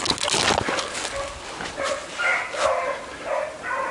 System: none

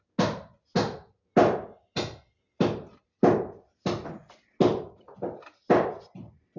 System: none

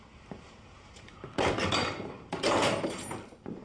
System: vocoder, BigVGAN v2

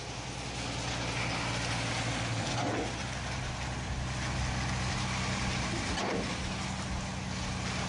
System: none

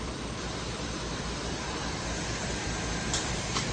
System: vocoder, BigVGAN v2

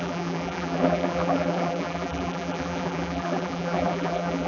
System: vocoder, BigVGAN v2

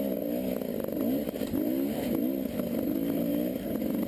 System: none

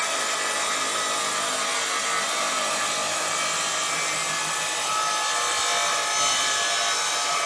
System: none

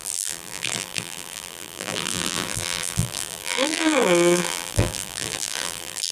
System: vocoder, BigVGAN v2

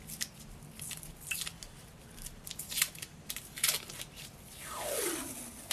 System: none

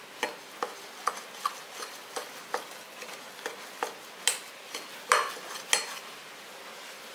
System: none